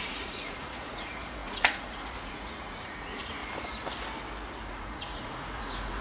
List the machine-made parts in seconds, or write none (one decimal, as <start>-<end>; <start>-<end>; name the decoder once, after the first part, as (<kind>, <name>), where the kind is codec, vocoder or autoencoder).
0.0-3.4 (vocoder, Vocos); 4.7-6.0